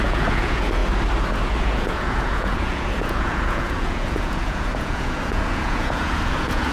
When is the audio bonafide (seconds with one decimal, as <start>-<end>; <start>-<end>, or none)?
0.8-1.6